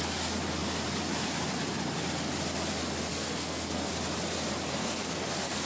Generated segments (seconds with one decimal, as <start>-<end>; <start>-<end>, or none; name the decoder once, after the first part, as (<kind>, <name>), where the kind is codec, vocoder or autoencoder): 3.1-3.9 (codec, SNAC); 4.8-5.7